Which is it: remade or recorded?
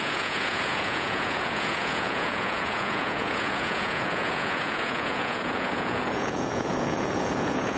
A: remade